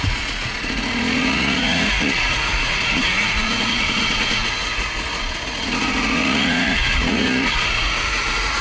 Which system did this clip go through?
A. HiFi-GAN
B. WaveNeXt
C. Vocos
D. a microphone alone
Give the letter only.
C